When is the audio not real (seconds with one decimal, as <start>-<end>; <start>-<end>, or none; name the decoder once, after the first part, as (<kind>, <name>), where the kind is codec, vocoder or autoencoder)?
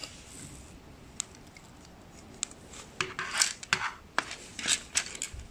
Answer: none